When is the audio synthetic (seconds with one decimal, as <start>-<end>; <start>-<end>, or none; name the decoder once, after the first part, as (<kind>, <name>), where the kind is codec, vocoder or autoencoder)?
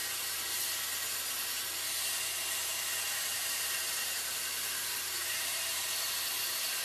0.0-0.6 (vocoder, BigVGAN v2); 3.3-5.8